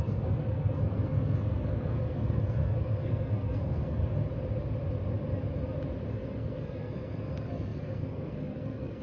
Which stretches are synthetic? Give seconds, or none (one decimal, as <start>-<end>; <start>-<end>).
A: 0.0-4.0; 6.1-9.0